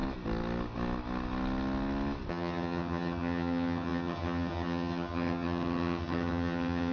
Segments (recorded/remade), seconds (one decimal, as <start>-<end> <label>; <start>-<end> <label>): 0.0-2.3 recorded; 2.3-6.9 remade